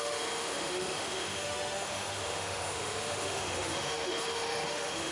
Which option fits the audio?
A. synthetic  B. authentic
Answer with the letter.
A